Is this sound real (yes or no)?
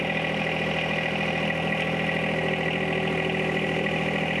yes